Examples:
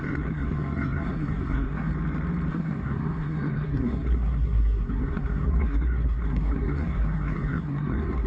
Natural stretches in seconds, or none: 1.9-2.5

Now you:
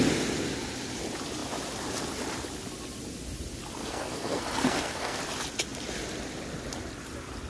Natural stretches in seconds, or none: 0.0-3.8; 5.2-7.5

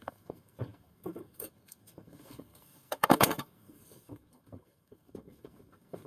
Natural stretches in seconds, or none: none

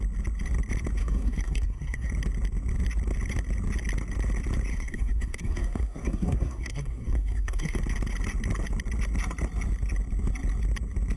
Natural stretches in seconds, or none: 0.0-1.0; 2.1-4.7; 7.8-11.2